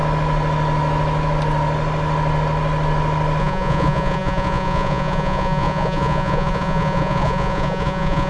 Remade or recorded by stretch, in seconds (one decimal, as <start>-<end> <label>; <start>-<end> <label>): 0.0-3.4 recorded; 3.4-8.3 remade